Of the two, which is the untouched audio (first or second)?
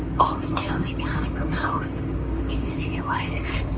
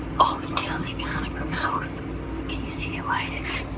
second